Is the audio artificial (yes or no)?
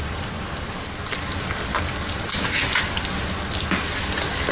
no